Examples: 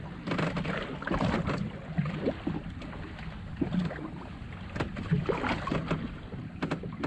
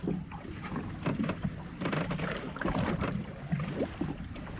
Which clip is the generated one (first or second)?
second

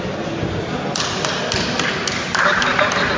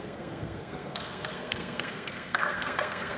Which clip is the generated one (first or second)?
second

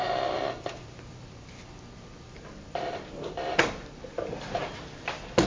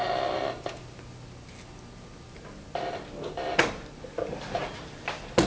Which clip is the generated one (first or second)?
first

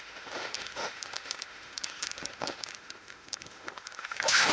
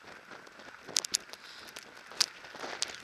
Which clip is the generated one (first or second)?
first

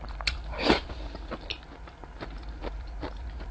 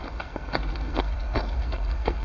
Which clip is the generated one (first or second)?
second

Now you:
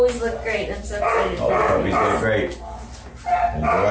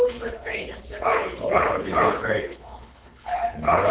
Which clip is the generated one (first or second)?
second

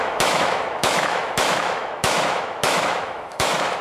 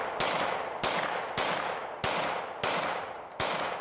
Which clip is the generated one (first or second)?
first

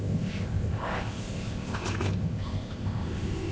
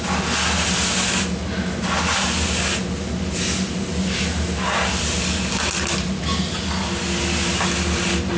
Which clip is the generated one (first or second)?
first